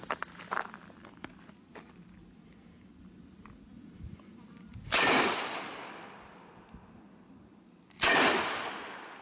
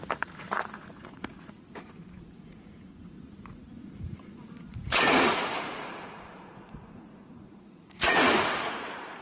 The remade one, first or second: second